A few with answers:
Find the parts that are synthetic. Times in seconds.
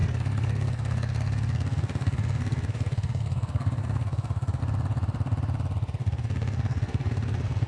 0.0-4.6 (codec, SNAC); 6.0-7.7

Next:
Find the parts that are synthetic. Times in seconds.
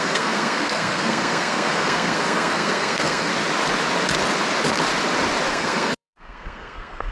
0.0-3.3 (codec, SNAC); 5.5-7.1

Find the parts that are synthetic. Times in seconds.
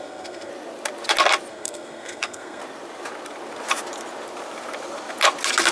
0.0-0.5 (codec, SNAC); 1.5-2.6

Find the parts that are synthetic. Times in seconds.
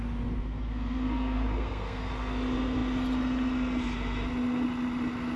0.4-2.1 (codec, SNAC)